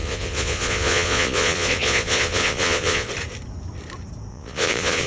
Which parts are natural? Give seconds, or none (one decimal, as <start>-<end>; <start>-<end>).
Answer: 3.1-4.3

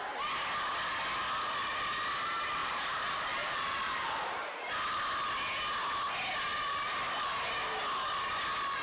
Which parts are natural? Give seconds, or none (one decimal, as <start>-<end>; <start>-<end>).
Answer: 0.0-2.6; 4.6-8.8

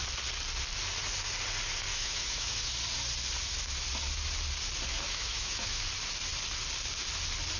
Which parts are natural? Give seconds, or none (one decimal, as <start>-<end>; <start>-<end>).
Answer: 0.0-1.9; 2.7-4.9; 5.8-7.6

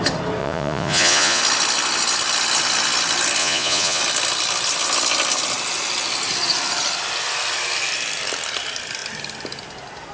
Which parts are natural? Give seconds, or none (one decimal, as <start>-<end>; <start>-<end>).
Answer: 0.0-0.4; 1.4-3.4; 4.0-10.1